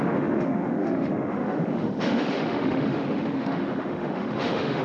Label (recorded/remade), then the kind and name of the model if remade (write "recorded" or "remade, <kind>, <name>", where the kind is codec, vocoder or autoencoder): remade, autoencoder, DAC-VAE